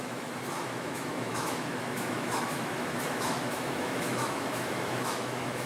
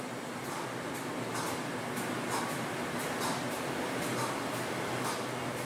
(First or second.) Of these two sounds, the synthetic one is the first